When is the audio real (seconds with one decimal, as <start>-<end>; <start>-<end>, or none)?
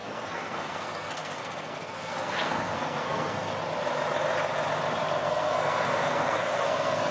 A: 3.5-5.2